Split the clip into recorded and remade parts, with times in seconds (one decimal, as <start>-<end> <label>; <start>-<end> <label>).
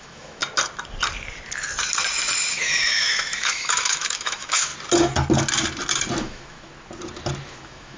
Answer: 0.0-0.4 remade; 0.4-2.5 recorded; 2.5-4.7 remade; 4.7-6.2 recorded; 6.2-6.7 remade; 6.7-7.4 recorded; 7.4-8.0 remade